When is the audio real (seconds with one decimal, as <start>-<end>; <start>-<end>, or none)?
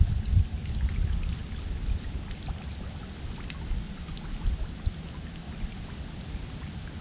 0.0-7.0